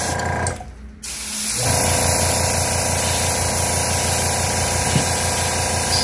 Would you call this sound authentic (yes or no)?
yes